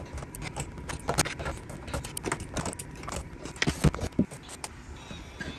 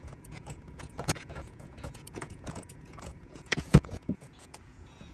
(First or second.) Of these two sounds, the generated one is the second